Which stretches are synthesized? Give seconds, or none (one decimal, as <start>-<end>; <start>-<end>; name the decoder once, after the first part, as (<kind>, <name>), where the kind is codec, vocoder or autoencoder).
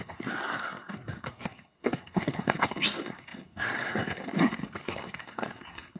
0.0-6.0 (codec, SNAC)